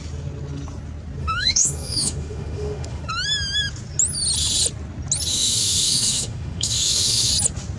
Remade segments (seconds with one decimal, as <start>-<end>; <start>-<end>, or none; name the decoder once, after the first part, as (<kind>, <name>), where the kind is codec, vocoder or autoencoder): 1.2-3.1 (autoencoder, DAC-VAE); 5.3-7.3